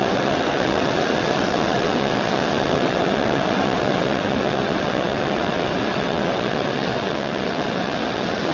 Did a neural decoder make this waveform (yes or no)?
yes